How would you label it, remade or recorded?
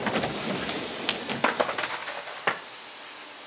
recorded